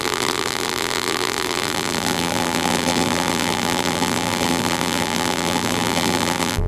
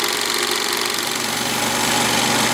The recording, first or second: second